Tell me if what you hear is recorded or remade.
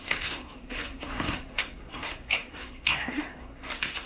remade